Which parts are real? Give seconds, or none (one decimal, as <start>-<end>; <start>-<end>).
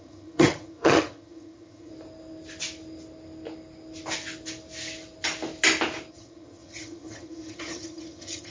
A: 1.9-6.1